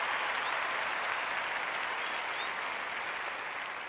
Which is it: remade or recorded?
recorded